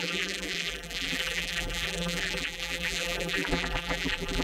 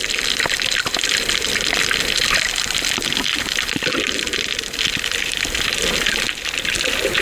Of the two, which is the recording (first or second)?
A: second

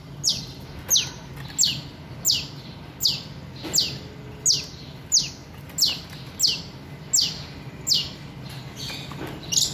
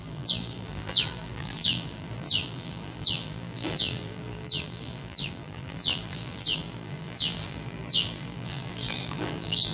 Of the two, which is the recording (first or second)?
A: first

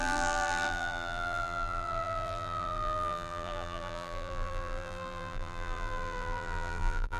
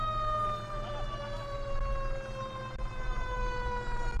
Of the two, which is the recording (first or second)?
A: second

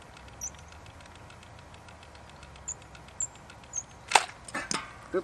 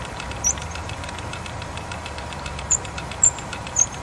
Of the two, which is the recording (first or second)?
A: first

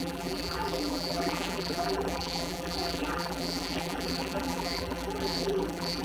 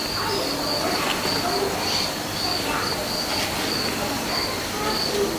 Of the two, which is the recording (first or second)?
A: second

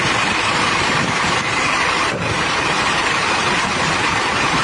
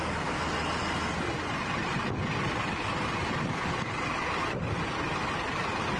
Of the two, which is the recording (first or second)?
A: second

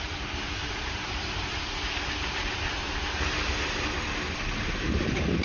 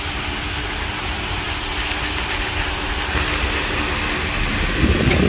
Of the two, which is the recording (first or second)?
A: second